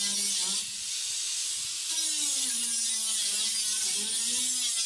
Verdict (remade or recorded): recorded